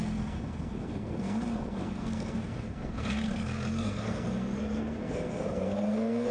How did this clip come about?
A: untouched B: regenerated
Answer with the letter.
B